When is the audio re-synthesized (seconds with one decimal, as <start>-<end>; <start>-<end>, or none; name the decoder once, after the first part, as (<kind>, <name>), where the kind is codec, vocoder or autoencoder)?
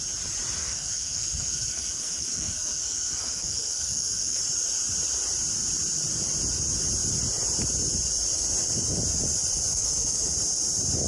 0.6-4.4 (codec, SNAC); 9.7-10.3